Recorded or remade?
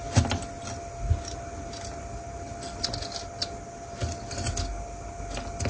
recorded